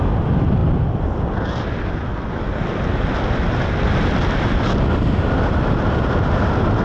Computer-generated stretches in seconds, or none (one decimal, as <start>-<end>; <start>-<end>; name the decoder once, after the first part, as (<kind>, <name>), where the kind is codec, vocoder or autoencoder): none